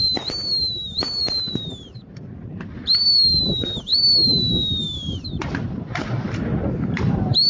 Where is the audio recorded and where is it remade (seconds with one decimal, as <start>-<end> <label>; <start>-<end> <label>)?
0.0-7.5 remade